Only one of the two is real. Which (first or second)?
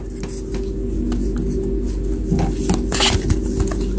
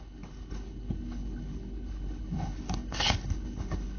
first